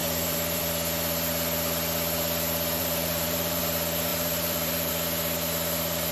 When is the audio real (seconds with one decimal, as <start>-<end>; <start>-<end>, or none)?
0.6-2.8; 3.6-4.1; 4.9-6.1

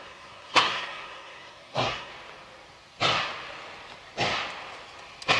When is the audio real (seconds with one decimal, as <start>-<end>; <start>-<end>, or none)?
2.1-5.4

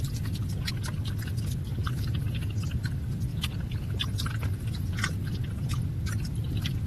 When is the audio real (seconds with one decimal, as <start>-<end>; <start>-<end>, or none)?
0.0-1.7; 2.8-3.3; 5.9-6.9